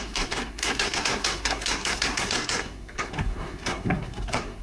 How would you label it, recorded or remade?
remade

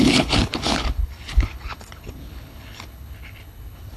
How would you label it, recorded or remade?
remade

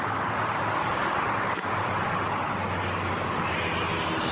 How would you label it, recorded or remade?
recorded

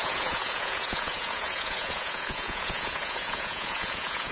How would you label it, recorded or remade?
remade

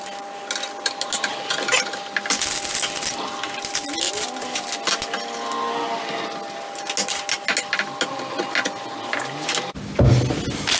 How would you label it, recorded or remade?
recorded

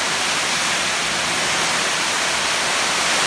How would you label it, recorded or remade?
recorded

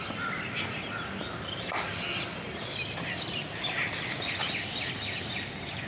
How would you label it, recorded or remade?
recorded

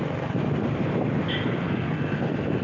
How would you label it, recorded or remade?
recorded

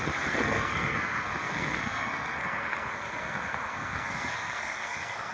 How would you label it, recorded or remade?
remade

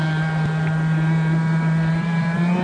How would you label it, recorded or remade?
recorded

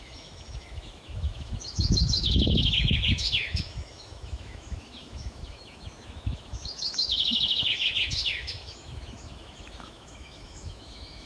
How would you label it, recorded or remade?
remade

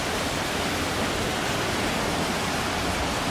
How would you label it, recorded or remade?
remade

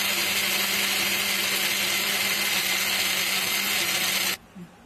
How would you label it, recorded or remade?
recorded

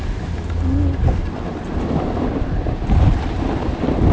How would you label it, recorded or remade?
recorded